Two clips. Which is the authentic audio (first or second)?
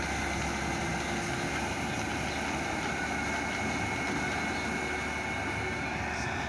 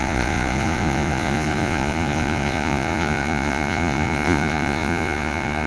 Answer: first